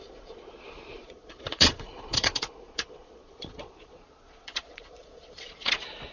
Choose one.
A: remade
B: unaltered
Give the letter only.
A